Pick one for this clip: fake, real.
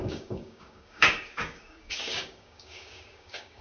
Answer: fake